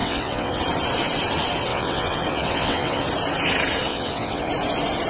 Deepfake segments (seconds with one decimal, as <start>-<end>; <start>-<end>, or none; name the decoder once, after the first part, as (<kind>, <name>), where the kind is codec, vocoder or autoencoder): 0.0-0.6 (vocoder, WaveNeXt); 1.7-3.0; 3.9-4.5